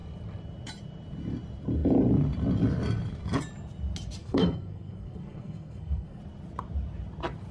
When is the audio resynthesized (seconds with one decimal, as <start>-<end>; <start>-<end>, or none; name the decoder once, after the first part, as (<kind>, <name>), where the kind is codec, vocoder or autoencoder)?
4.2-6.2 (codec, SNAC)